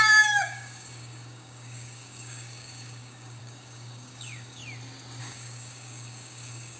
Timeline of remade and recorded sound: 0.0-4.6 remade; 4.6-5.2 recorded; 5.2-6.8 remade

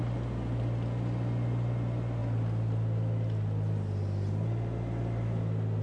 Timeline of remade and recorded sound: 0.0-5.8 recorded

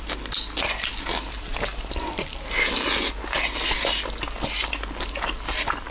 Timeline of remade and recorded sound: 0.0-5.9 recorded